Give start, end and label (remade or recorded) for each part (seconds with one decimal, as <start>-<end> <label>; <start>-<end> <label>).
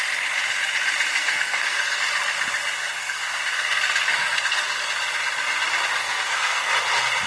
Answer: 0.0-1.1 recorded; 1.1-2.0 remade; 2.0-2.8 recorded; 2.8-4.8 remade; 4.8-6.0 recorded; 6.0-6.7 remade; 6.7-7.3 recorded